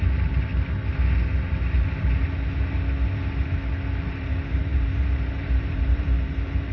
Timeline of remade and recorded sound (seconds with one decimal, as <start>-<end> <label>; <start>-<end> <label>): 0.0-0.5 remade; 0.5-4.0 recorded; 4.0-6.7 remade